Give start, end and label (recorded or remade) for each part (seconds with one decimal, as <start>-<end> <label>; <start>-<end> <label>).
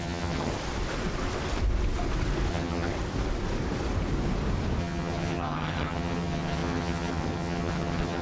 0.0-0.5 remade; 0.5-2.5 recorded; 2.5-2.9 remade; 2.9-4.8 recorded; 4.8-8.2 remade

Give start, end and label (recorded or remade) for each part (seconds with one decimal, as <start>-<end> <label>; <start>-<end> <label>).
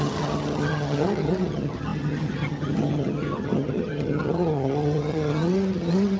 0.0-6.2 remade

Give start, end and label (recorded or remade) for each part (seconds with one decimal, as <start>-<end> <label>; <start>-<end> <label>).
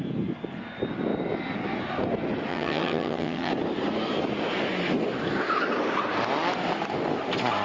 0.0-2.5 recorded; 2.5-3.5 remade; 3.5-7.6 recorded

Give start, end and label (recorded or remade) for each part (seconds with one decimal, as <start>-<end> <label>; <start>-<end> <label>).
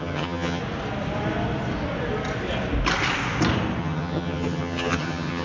0.0-0.6 remade; 0.6-3.8 recorded; 3.8-5.4 remade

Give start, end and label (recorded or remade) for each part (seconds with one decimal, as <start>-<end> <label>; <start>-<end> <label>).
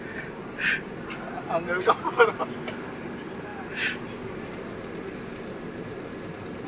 0.0-6.7 recorded